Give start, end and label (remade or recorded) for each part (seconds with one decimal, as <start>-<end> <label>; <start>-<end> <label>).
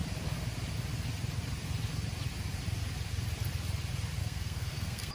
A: 0.0-4.2 recorded; 4.2-5.1 remade